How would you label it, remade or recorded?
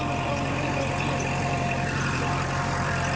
remade